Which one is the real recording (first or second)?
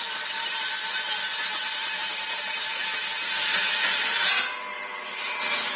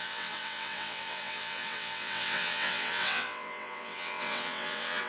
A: first